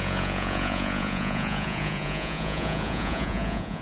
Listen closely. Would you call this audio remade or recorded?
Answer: remade